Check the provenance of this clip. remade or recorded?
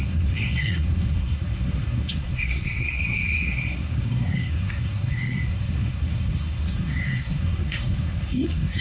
remade